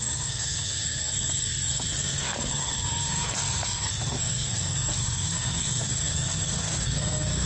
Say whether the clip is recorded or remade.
remade